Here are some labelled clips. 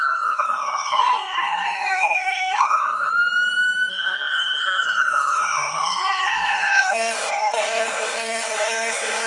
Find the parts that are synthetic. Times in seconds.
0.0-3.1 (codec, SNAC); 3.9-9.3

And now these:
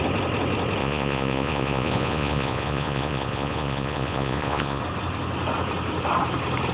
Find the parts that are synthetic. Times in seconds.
0.8-4.8 (vocoder, Vocos)

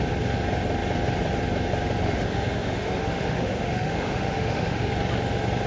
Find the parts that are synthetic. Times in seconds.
2.0-4.9 (autoencoder, DAC-VAE)